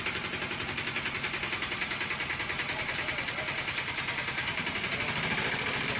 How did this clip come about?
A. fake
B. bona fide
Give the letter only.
B